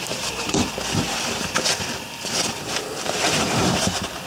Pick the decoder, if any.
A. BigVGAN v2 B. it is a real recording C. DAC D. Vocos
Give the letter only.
A